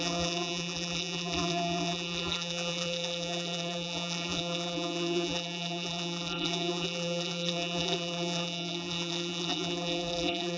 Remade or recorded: remade